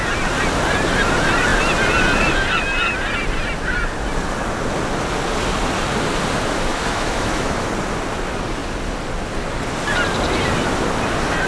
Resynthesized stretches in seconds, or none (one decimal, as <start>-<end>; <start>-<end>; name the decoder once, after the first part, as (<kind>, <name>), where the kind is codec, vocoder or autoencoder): 6.7-7.7 (autoencoder, DAC-VAE)